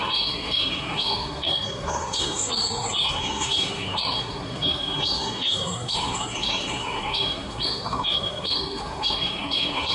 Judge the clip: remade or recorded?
remade